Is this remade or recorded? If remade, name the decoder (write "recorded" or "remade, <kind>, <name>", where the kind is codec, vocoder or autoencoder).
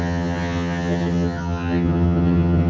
remade, vocoder, HiFi-GAN